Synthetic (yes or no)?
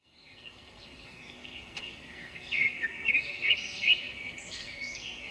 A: yes